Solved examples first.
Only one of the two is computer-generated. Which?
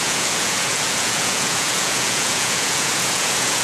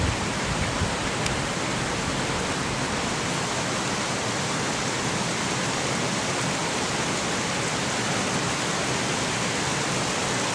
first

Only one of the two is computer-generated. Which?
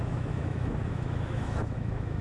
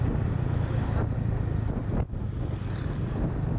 first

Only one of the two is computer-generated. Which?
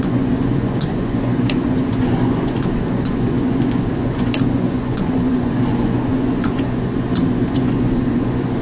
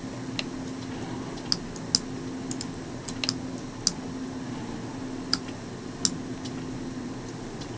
first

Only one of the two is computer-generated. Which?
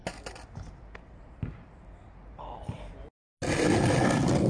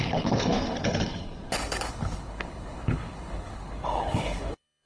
second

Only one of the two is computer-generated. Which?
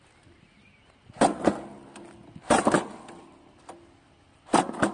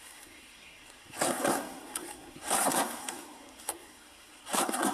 second